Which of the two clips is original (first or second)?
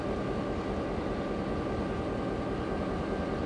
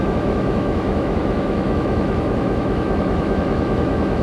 first